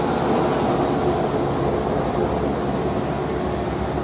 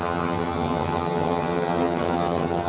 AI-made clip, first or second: second